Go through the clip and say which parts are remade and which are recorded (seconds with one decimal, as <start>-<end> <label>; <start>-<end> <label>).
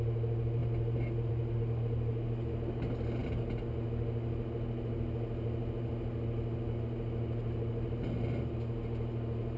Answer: 0.0-9.6 recorded